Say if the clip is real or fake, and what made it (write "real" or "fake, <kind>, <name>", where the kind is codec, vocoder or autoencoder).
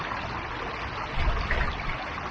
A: real